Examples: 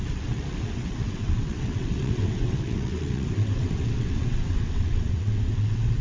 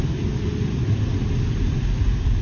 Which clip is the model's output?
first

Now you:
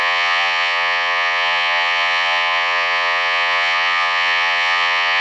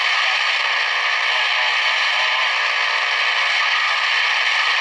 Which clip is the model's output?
first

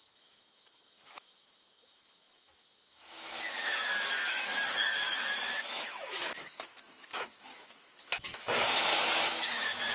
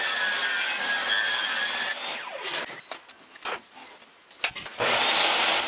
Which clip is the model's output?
first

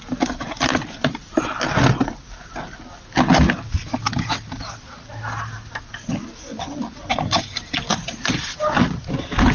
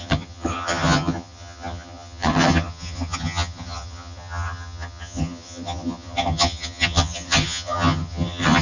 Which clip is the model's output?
second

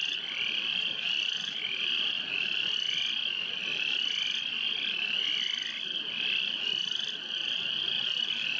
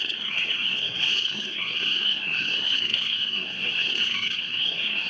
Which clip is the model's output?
second